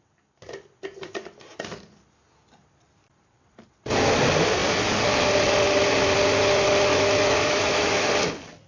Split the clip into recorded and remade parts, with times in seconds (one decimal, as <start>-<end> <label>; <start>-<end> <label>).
0.0-6.9 recorded; 6.9-8.1 remade; 8.1-8.7 recorded

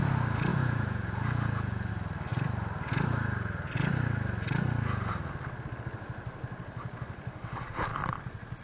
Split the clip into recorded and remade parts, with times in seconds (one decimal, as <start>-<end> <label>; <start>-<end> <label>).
0.0-0.5 recorded; 0.5-1.9 remade; 1.9-8.6 recorded

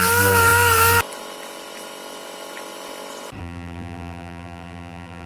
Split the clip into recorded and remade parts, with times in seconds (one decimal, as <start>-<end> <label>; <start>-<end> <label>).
0.0-3.4 recorded; 3.4-5.3 remade

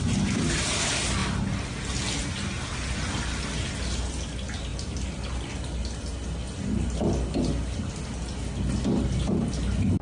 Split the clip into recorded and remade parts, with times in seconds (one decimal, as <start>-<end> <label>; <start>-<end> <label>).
0.0-10.0 recorded

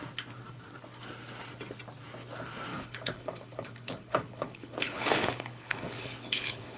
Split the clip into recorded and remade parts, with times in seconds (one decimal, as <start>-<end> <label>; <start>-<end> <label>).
0.0-2.7 recorded; 2.7-6.8 remade